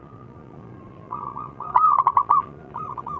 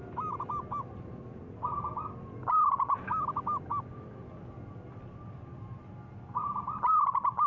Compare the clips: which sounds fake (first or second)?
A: first